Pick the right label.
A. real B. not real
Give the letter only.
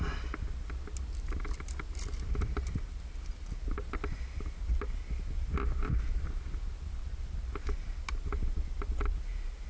A